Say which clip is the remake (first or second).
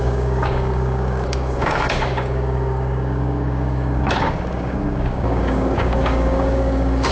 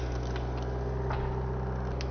first